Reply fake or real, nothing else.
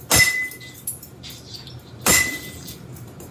real